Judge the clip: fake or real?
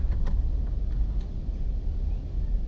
real